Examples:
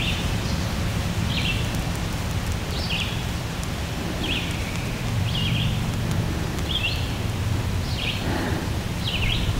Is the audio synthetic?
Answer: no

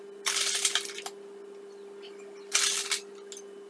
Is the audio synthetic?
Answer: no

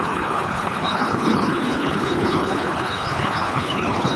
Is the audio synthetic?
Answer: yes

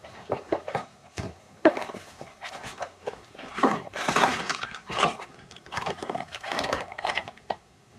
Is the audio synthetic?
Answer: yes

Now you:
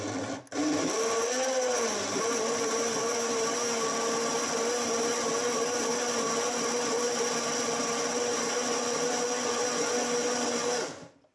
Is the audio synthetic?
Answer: no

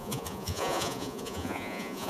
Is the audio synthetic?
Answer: yes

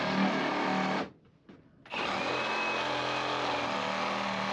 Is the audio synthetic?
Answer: no